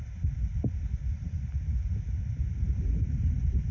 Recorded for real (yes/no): yes